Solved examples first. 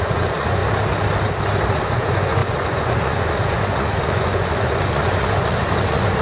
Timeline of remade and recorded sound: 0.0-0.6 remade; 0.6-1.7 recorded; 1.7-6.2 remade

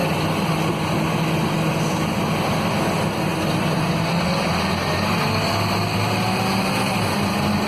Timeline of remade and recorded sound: 0.0-7.7 recorded